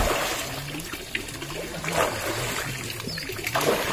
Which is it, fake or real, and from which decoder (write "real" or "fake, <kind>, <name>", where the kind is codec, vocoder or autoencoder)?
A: real